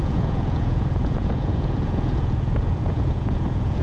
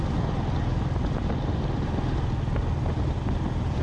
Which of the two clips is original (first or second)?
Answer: second